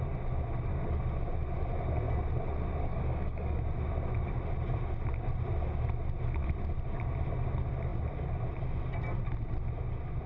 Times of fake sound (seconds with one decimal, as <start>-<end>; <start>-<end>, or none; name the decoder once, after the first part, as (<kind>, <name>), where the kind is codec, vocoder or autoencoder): 2.9-3.6 (codec, DAC)